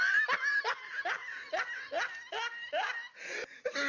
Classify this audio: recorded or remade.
recorded